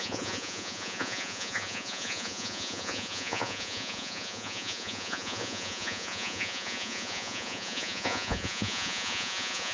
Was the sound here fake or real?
fake